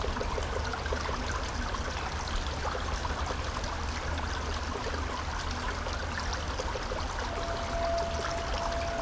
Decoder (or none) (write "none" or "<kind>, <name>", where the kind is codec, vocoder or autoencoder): none